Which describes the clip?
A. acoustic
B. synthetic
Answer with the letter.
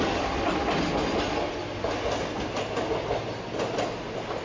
A